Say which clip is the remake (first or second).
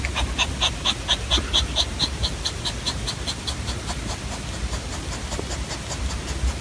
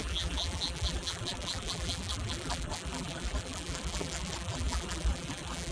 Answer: second